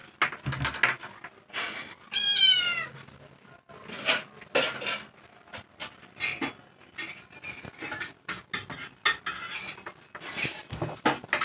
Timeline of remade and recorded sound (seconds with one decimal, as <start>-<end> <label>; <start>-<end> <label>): 0.0-11.4 recorded